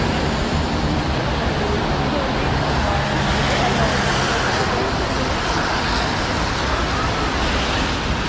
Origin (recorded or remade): recorded